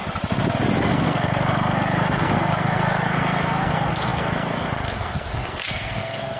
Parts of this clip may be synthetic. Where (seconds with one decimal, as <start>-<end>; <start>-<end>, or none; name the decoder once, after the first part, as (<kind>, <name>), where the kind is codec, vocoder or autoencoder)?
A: 0.8-6.4 (codec, SNAC)